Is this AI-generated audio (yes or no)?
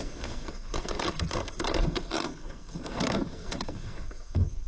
yes